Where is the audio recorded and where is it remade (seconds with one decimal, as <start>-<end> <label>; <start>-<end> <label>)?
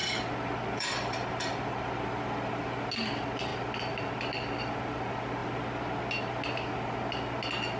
0.0-2.9 remade; 2.9-5.4 recorded; 5.4-6.0 remade; 6.0-7.8 recorded